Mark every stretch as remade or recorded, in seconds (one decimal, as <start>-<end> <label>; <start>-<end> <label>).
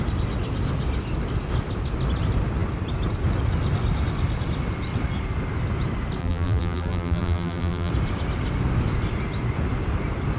0.0-6.2 recorded; 6.2-7.9 remade; 7.9-10.4 recorded